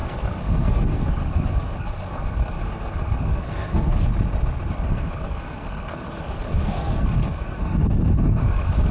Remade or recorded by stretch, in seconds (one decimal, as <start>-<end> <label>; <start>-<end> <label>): 0.0-4.1 remade; 4.1-4.7 recorded; 4.7-8.9 remade